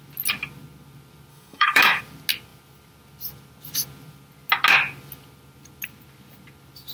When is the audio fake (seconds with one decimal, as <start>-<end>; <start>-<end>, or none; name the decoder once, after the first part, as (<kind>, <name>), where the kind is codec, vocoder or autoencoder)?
1.3-2.0 (codec, DAC)